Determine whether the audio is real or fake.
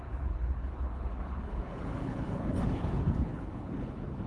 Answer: fake